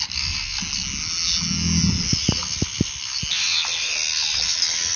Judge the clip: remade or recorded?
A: recorded